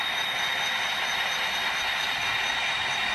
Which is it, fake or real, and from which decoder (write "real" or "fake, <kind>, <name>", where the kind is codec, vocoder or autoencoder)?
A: real